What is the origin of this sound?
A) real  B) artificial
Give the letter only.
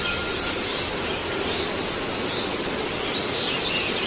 A